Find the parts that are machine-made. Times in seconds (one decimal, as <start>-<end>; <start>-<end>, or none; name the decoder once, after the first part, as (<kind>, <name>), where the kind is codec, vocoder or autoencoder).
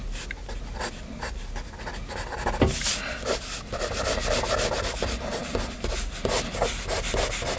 none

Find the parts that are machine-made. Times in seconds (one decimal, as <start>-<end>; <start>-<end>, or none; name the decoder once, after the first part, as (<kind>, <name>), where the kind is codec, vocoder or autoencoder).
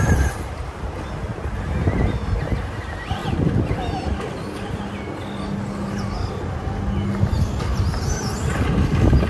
none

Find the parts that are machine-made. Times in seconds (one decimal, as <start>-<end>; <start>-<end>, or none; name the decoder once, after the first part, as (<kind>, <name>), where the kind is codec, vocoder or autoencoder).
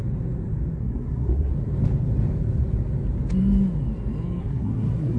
0.8-1.5 (codec, SNAC); 4.4-5.2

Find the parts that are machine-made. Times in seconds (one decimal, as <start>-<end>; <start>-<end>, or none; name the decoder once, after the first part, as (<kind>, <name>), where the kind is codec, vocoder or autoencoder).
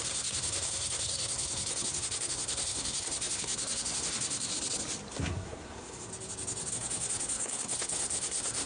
0.0-4.5 (codec, SNAC); 5.1-6.1; 6.7-8.7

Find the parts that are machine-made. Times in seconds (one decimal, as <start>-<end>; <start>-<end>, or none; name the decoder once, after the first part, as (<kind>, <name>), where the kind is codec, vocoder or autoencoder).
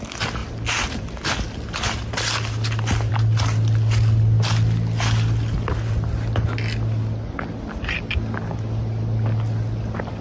none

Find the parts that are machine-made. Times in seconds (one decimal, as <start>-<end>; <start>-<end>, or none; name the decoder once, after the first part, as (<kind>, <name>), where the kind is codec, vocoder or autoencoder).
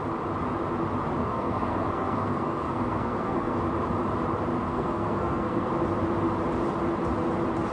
1.2-3.6 (codec, SNAC); 4.7-5.7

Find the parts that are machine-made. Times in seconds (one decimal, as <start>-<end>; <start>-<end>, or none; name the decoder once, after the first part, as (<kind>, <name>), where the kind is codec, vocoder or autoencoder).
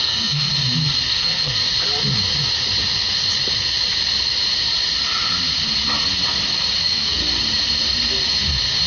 0.0-0.5 (codec, SNAC); 1.1-1.6; 6.8-7.2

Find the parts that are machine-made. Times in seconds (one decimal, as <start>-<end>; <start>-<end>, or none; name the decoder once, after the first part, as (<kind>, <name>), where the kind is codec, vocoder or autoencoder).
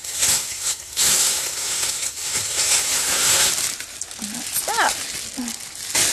0.0-3.5 (codec, SNAC)